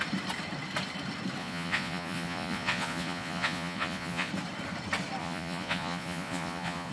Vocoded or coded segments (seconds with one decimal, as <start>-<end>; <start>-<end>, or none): 1.4-4.3; 5.2-6.9